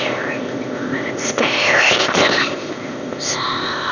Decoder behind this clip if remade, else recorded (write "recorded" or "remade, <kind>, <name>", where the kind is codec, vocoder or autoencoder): remade, codec, ZipCodec